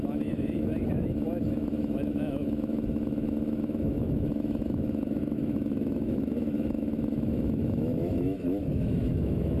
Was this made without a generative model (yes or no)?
no